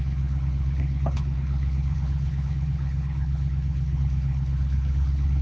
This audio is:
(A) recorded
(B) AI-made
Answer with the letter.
B